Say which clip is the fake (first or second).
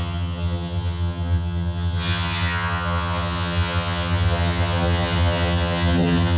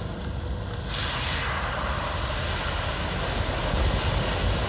first